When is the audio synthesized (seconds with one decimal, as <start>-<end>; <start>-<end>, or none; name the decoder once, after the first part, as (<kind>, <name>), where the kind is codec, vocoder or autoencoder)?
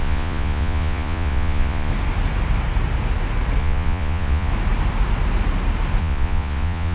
0.0-1.9 (vocoder, Vocos); 3.6-4.5; 6.0-6.9